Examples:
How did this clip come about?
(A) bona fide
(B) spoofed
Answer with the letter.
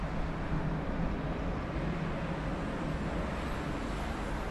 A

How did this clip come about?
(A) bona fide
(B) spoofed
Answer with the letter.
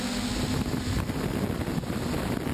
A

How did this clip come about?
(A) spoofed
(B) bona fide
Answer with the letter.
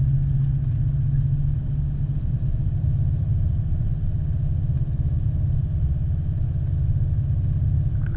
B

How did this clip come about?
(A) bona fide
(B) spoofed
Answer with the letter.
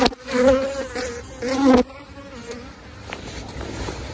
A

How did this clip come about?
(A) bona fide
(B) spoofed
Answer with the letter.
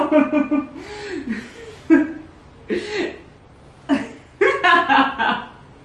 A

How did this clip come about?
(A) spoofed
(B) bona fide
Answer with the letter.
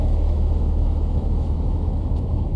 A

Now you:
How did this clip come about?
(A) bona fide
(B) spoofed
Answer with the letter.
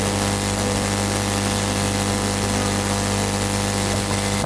A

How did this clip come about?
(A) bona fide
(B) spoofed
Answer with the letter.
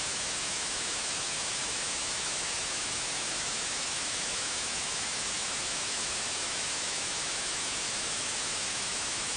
B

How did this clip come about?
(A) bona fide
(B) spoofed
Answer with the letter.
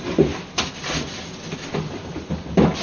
A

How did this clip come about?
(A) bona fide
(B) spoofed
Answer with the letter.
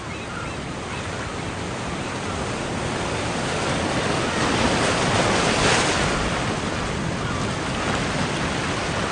A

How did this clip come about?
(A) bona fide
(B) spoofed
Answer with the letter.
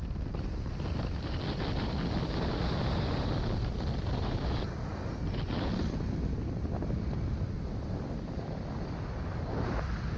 A